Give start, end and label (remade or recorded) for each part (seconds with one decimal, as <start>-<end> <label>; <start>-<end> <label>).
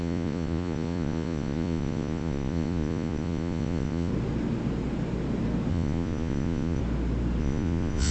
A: 0.0-4.1 remade; 4.1-5.7 recorded; 5.7-6.8 remade; 6.8-7.4 recorded; 7.4-8.1 remade